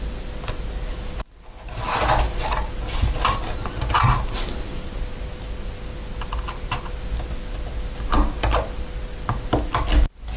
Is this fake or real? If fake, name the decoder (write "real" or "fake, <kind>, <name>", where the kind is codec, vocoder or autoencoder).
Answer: real